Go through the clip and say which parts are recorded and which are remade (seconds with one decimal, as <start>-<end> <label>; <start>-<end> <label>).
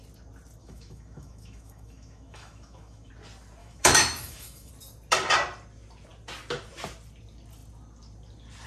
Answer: 0.0-0.6 recorded; 0.6-3.1 remade; 3.1-3.6 recorded; 3.6-4.7 remade; 4.7-8.7 recorded